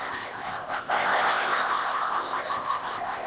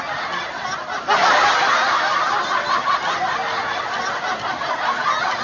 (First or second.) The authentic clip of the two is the second